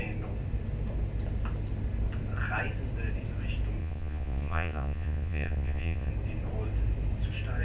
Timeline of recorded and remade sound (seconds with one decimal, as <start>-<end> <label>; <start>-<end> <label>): 0.0-3.8 recorded; 3.8-6.1 remade; 6.1-7.6 recorded